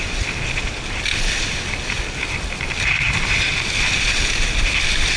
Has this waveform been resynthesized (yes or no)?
no